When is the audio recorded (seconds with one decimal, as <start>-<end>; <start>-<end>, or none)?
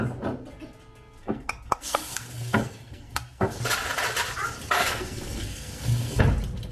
0.0-1.2; 3.6-4.8; 6.2-6.7